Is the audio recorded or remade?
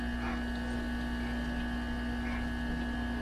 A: recorded